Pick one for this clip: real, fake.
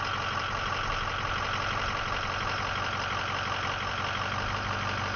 real